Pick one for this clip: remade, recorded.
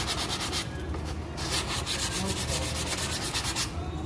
recorded